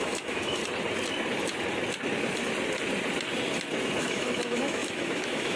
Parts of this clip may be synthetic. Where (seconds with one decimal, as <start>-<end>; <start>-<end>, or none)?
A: 0.0-0.6; 4.0-5.6